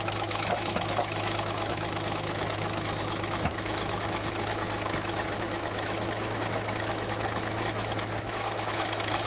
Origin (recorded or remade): remade